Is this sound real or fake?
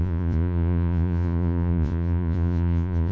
fake